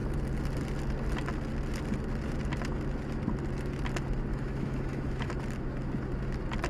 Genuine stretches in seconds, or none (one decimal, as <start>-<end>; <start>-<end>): 0.0-4.3; 5.3-6.7